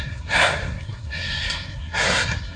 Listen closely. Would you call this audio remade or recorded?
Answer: remade